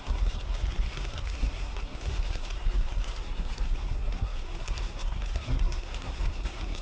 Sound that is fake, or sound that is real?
fake